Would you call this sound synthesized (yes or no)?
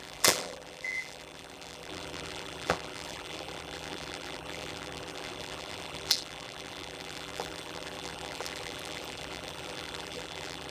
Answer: yes